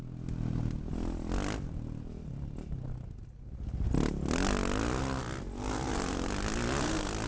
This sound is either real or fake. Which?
real